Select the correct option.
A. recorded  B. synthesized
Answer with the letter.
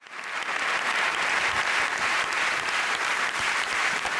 B